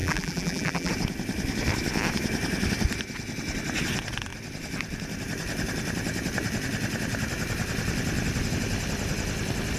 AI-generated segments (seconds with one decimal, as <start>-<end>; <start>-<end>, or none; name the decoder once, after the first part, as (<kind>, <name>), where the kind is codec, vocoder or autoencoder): 0.0-0.9 (vocoder, BigVGAN v2)

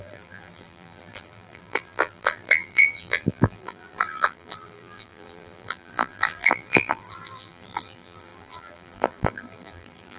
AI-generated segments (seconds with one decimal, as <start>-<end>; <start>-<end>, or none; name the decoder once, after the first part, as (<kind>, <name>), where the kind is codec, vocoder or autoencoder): 0.0-10.2 (vocoder, BigVGAN v2)

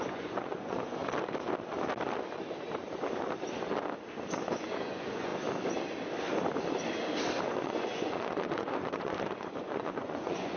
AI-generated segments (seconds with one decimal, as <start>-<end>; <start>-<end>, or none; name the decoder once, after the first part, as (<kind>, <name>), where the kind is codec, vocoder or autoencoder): 0.0-1.0 (vocoder, Vocos); 4.5-5.3; 7.5-10.6

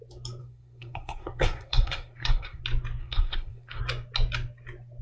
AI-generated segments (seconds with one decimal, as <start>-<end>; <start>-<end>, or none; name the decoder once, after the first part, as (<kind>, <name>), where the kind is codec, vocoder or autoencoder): 0.4-2.6 (codec, SNAC); 3.0-3.8